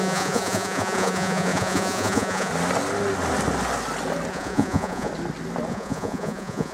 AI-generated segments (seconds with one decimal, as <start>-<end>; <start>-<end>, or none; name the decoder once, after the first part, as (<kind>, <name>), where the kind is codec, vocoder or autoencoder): 0.0-2.5 (vocoder, Vocos); 4.3-5.1; 5.7-6.7